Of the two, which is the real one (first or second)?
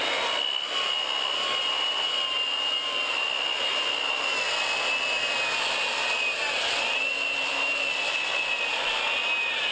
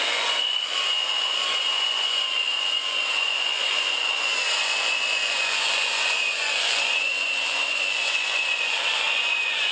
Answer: first